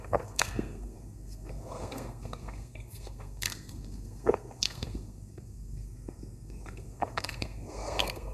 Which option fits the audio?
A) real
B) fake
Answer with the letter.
B